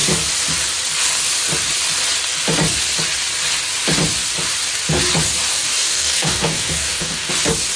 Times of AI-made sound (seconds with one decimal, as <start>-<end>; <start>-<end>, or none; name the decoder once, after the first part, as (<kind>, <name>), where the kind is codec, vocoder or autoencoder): 5.5-7.3 (codec, DAC)

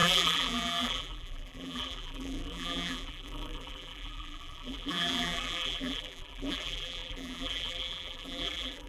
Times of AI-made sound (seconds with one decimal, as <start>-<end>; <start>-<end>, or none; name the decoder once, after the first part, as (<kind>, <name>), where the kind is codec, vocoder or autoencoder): 0.0-8.9 (vocoder, BigVGAN v2)